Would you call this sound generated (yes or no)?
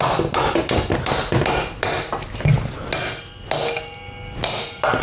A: no